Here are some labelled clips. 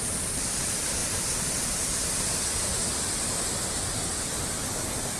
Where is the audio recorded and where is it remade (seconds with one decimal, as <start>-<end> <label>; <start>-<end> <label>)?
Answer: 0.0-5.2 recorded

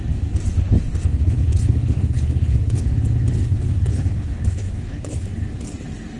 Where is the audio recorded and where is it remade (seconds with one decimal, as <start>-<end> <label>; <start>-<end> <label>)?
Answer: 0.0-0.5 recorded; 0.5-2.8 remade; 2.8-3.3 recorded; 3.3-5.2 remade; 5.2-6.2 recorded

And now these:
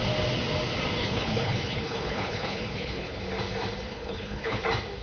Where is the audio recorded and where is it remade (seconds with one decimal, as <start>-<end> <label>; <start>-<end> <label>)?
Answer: 0.0-1.0 recorded; 1.0-3.2 remade; 3.2-3.9 recorded; 3.9-4.6 remade; 4.6-5.0 recorded

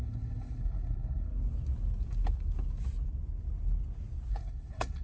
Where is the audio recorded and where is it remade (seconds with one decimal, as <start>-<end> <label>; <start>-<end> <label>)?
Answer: 0.0-1.3 remade; 1.3-4.3 recorded; 4.3-5.0 remade

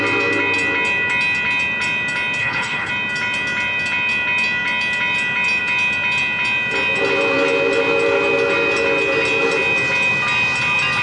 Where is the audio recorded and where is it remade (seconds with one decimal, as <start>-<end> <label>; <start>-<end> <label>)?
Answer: 0.0-2.4 recorded; 2.4-2.9 remade; 2.9-11.0 recorded

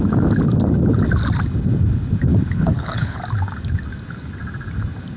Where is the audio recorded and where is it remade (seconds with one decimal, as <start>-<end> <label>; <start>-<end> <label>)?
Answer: 0.0-2.3 recorded; 2.3-3.2 remade; 3.2-5.2 recorded

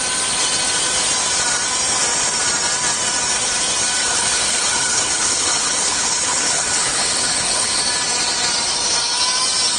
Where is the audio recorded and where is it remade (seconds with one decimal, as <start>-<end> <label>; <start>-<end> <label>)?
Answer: 0.0-4.0 recorded; 4.0-7.8 remade; 7.8-9.8 recorded